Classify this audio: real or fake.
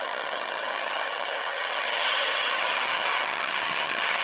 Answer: fake